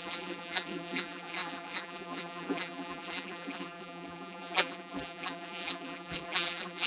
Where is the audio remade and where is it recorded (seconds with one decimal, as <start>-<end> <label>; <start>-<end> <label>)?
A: 0.0-6.9 remade